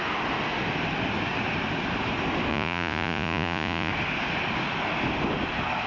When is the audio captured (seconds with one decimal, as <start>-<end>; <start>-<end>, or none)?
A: 0.0-2.5; 3.9-5.9